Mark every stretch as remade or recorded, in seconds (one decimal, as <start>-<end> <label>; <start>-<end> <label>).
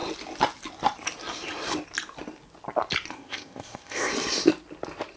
0.0-3.1 recorded; 3.1-4.1 remade; 4.1-5.2 recorded